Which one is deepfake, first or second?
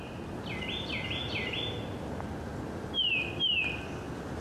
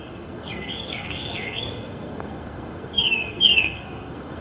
second